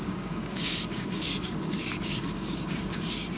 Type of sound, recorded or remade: remade